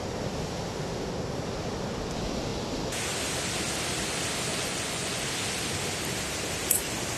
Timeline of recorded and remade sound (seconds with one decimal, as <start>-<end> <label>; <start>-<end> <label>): 0.0-4.5 recorded; 4.5-5.2 remade; 5.2-7.2 recorded